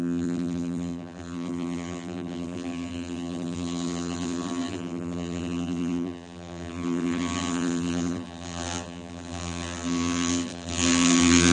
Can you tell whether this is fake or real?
fake